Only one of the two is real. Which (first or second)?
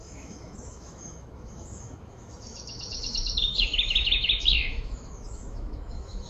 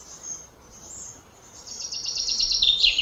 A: second